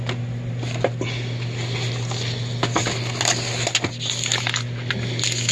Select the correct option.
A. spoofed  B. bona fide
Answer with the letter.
B